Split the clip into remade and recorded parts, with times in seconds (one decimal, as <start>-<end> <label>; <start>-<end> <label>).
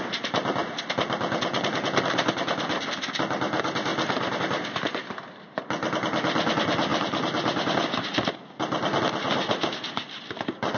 0.0-10.8 recorded